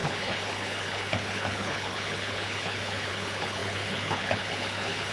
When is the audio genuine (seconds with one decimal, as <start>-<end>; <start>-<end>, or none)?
none

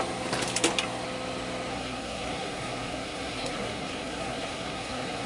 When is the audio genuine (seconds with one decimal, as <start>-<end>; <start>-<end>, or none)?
0.0-1.7